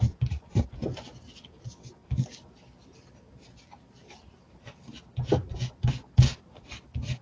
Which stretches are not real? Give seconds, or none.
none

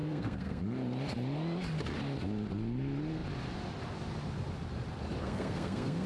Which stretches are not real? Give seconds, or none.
0.0-0.6; 5.2-6.1

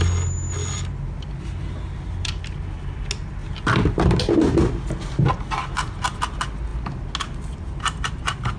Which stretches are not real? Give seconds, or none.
none